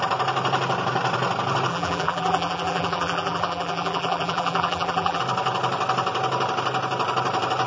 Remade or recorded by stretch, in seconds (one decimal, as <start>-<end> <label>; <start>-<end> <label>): 0.0-1.7 recorded; 1.7-5.2 remade; 5.2-7.7 recorded